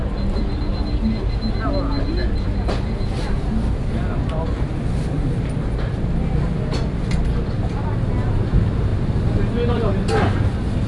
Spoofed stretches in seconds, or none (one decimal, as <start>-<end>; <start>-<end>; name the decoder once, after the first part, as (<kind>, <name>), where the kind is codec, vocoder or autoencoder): none